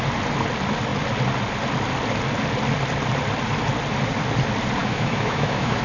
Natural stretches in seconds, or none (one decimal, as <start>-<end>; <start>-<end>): 0.0-4.8